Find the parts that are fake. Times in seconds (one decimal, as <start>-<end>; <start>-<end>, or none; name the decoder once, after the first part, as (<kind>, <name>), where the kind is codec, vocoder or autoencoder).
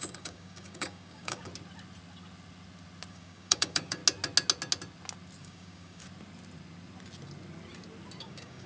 0.0-1.5 (codec, DAC); 3.1-4.0; 5.4-6.0; 8.2-8.7